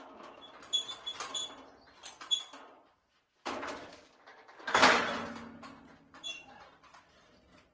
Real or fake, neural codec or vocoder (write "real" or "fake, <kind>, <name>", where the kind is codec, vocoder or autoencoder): real